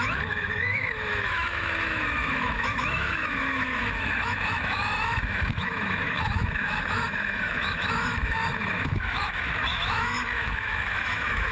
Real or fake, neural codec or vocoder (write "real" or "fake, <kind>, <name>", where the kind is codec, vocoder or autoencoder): fake, autoencoder, DAC-VAE